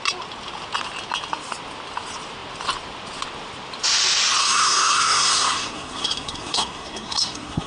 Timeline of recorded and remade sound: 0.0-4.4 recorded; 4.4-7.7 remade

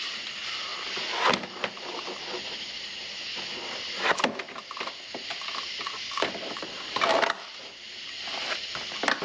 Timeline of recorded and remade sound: 0.0-9.2 recorded

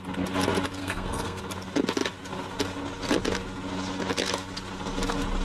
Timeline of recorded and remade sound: 0.0-0.8 recorded; 0.8-1.4 remade; 1.4-5.4 recorded